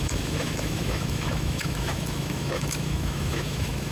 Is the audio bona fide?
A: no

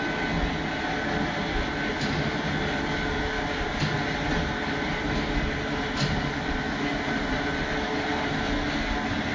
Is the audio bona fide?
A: yes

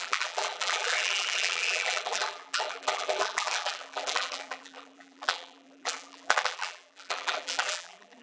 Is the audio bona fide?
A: no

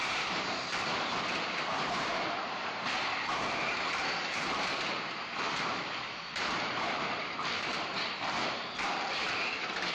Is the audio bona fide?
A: no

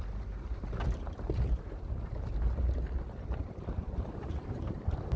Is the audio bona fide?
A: no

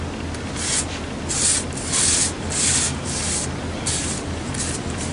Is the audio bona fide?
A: yes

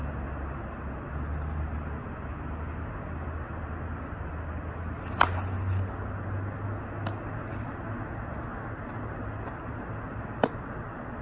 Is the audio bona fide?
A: yes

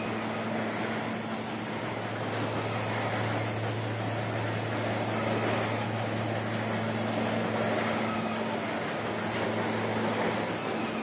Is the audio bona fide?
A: yes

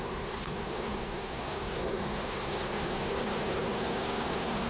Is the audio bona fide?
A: no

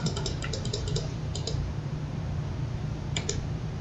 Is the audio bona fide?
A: no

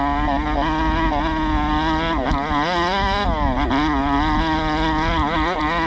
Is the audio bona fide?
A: yes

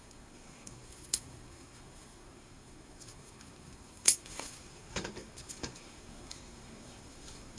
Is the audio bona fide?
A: no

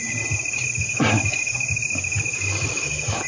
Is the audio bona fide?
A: yes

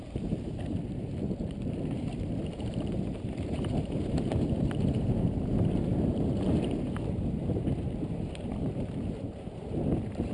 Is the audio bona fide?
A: no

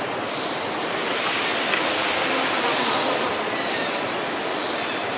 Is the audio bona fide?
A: yes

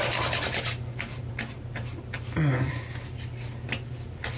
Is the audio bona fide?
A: yes